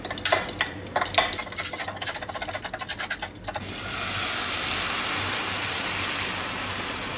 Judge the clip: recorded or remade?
recorded